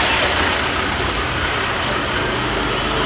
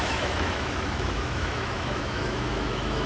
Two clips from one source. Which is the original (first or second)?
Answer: first